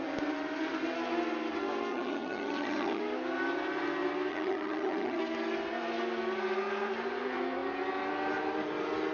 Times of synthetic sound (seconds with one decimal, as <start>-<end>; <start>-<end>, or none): 1.9-3.0; 4.3-5.2